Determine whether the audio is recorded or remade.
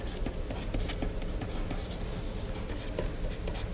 recorded